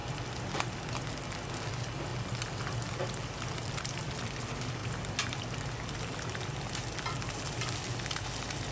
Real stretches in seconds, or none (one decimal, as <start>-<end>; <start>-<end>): 1.1-3.6; 4.2-8.7